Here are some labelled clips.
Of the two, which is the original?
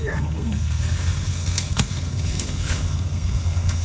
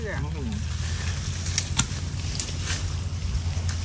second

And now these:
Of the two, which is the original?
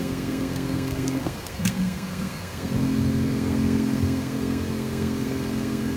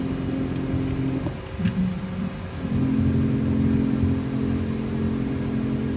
second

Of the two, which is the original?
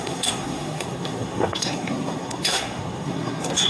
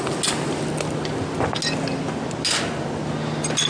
second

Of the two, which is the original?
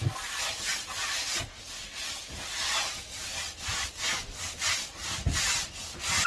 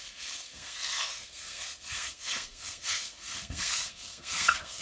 first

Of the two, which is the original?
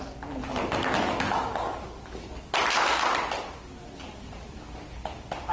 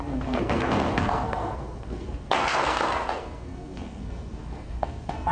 first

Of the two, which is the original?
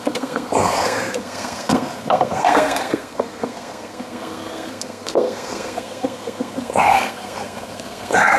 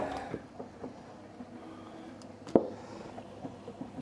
second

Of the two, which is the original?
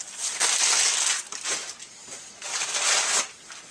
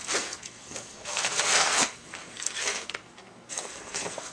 first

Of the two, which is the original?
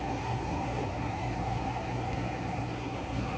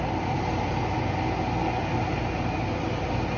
second